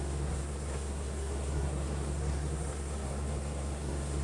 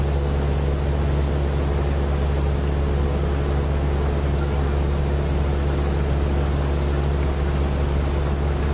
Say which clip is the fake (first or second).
first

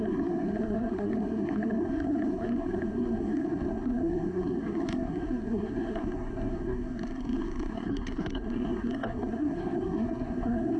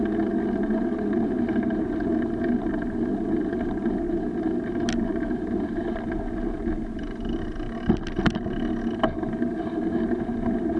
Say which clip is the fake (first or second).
first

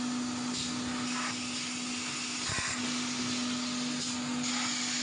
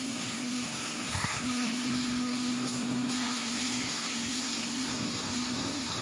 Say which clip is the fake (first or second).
second